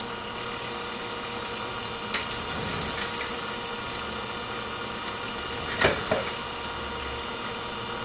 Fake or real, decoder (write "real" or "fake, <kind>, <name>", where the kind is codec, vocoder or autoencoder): real